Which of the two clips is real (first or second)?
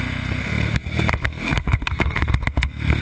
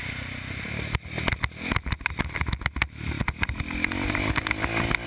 second